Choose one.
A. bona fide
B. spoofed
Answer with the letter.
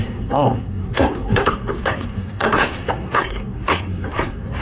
B